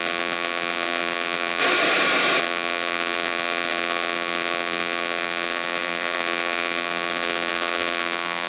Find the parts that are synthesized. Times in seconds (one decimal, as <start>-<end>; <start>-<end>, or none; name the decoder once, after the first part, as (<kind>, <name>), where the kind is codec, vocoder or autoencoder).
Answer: 0.0-1.6 (vocoder, BigVGAN v2); 2.4-8.5